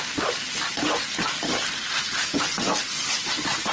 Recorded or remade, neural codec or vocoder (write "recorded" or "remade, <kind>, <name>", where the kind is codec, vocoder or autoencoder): recorded